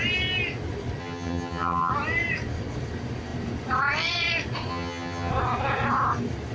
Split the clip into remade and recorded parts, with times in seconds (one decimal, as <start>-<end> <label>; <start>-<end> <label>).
0.0-1.0 recorded; 1.0-1.9 remade; 1.9-4.7 recorded; 4.7-5.3 remade; 5.3-6.5 recorded